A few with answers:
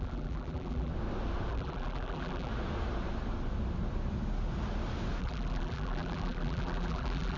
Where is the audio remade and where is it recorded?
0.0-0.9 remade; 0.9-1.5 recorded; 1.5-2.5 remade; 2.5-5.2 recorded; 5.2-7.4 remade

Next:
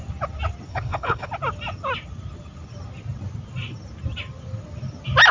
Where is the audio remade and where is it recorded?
0.0-0.7 recorded; 0.7-1.3 remade; 1.3-5.3 recorded

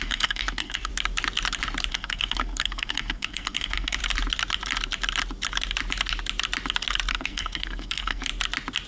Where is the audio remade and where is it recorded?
0.0-0.9 remade; 0.9-1.9 recorded; 1.9-4.0 remade; 4.0-7.1 recorded; 7.1-8.3 remade; 8.3-8.9 recorded